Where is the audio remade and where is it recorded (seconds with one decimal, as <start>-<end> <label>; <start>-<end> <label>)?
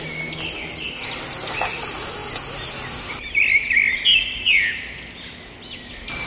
0.0-6.3 recorded